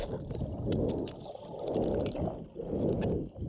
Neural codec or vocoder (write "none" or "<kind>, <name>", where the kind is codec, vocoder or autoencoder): none